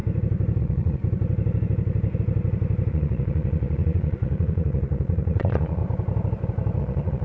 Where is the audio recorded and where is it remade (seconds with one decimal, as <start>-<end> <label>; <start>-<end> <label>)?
0.0-0.6 recorded; 0.6-1.0 remade; 1.0-2.9 recorded; 2.9-5.8 remade; 5.8-6.8 recorded; 6.8-7.2 remade